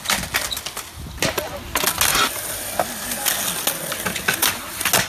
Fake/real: real